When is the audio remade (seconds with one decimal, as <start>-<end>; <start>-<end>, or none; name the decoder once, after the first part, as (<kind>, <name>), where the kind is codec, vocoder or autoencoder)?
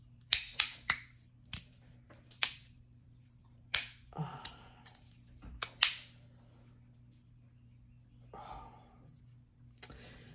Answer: 0.0-5.9 (vocoder, BigVGAN v2); 9.9-10.3